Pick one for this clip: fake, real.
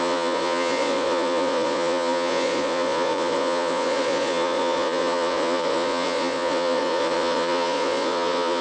fake